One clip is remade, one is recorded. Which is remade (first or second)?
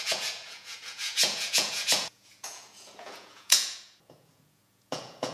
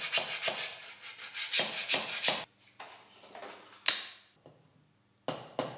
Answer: first